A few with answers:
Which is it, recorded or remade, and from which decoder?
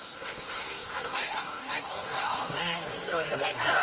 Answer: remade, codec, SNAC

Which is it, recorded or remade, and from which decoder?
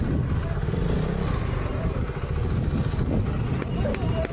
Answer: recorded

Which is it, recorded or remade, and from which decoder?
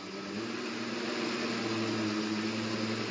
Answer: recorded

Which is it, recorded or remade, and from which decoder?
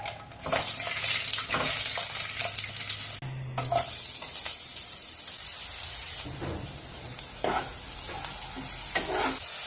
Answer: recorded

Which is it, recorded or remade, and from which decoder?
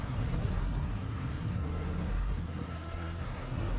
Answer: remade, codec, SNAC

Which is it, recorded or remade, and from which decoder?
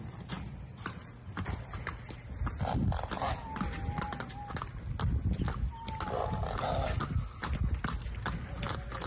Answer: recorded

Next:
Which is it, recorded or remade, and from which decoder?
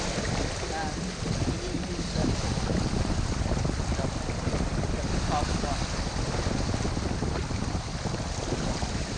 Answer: recorded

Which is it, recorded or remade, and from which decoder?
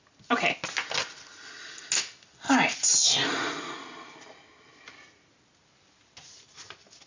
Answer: recorded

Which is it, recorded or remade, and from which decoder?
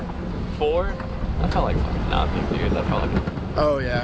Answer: recorded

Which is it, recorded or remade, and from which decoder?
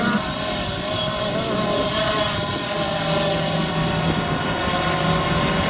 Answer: recorded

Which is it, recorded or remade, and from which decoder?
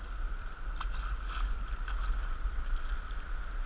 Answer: recorded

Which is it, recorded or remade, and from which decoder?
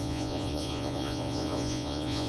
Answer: remade, vocoder, Vocos